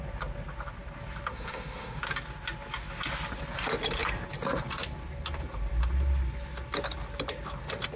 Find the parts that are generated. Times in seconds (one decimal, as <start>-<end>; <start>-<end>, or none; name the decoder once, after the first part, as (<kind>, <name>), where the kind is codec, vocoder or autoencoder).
1.3-2.0 (autoencoder, DAC-VAE)